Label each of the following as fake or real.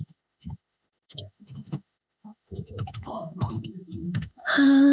fake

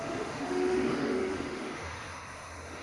fake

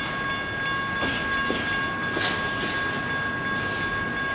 real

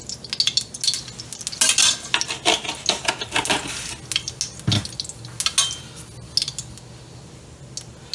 real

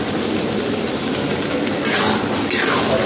real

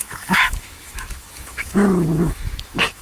fake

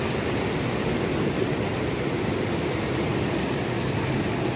real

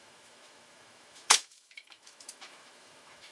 fake